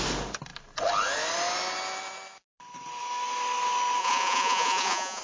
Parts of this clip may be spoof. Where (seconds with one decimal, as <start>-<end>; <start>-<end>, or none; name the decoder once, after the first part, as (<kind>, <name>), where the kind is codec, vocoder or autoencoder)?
4.0-5.2 (vocoder, Vocos)